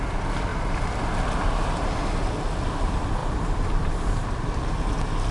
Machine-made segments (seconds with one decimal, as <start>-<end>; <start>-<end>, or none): 0.5-1.2; 3.2-4.1